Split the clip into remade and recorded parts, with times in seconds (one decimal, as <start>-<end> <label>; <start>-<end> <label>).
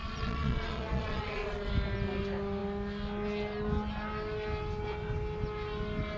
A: 0.0-1.7 remade; 1.7-6.2 recorded